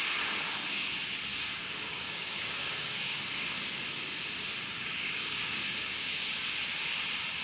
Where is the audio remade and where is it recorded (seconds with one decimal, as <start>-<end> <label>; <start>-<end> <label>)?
0.0-1.3 recorded; 1.3-3.2 remade; 3.2-4.7 recorded; 4.7-6.2 remade; 6.2-7.4 recorded